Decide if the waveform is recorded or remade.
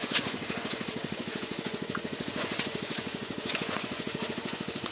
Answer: remade